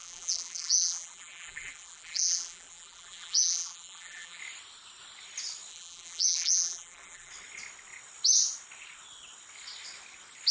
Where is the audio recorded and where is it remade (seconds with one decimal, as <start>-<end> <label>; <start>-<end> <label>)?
0.0-4.4 remade; 4.4-5.7 recorded; 5.7-7.3 remade; 7.3-10.5 recorded